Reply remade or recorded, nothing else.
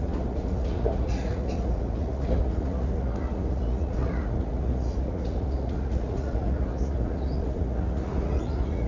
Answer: remade